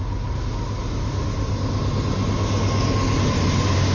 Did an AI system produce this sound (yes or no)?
no